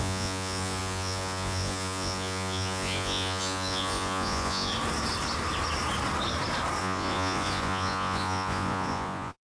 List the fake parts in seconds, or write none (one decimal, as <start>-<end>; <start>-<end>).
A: 0.0-4.7; 6.8-9.5